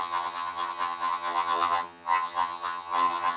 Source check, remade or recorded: remade